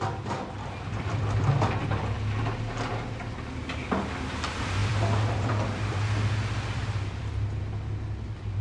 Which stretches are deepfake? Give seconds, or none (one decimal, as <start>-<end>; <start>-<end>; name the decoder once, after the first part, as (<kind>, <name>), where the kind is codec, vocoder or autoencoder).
4.8-7.6 (vocoder, BigVGAN v2)